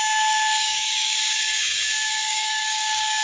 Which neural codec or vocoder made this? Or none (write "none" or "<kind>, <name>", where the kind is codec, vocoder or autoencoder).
codec, DAC